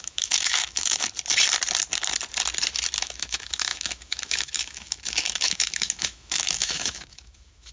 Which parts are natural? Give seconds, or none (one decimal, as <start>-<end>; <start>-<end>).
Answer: 1.0-3.0